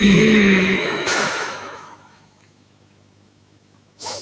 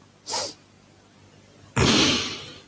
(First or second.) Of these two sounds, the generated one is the first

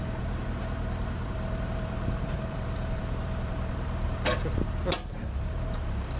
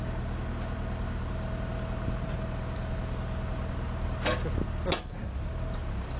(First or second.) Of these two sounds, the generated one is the first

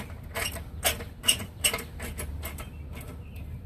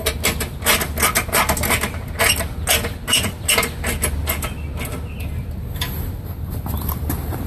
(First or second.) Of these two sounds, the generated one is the first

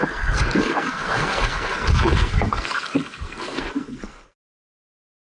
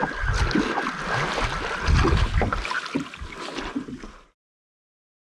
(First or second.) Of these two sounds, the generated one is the first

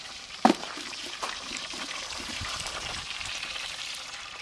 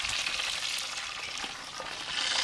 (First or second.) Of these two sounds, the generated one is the first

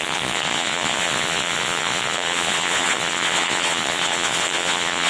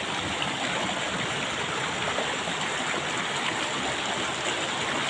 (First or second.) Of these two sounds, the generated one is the first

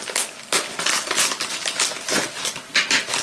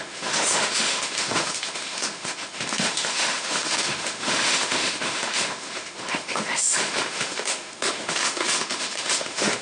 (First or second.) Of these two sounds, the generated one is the second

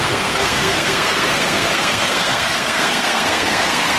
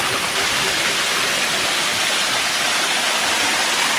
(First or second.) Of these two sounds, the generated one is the first